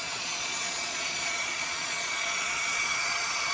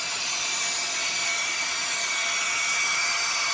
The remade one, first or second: first